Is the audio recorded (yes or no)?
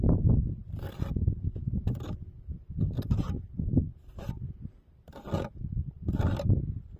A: yes